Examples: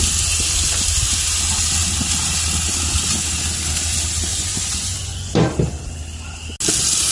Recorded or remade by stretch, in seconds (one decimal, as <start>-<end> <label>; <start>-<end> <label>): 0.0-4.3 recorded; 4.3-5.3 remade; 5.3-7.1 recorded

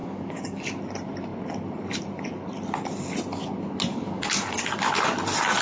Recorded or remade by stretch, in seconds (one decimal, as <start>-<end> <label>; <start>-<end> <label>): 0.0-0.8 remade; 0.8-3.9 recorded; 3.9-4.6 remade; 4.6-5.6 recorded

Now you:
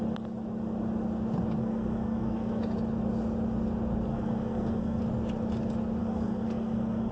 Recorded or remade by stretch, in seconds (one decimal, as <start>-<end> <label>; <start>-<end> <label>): 0.0-1.6 recorded; 1.6-2.6 remade; 2.6-4.1 recorded; 4.1-5.0 remade; 5.0-6.0 recorded; 6.0-7.1 remade

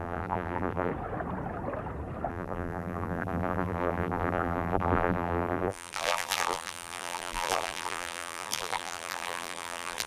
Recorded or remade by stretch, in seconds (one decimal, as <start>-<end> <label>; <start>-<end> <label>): 0.0-0.9 remade; 0.9-2.3 recorded; 2.3-10.1 remade

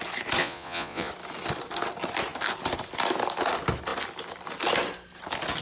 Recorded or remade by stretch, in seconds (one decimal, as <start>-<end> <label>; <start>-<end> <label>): 0.0-0.4 recorded; 0.4-1.1 remade; 1.1-5.6 recorded

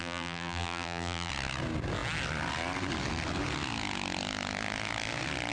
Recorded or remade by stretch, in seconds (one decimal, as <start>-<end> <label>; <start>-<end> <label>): 0.0-1.3 remade; 1.3-5.5 recorded

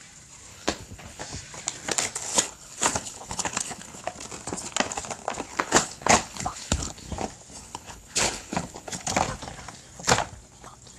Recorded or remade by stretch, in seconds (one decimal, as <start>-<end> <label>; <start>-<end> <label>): 0.0-0.5 recorded; 0.5-1.2 remade; 1.2-2.3 recorded; 2.3-4.0 remade; 4.0-5.5 recorded; 5.5-7.1 remade; 7.1-7.6 recorded; 7.6-9.1 remade; 9.1-11.0 recorded